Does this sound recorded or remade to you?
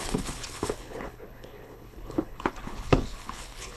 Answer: remade